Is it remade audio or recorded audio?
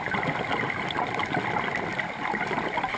recorded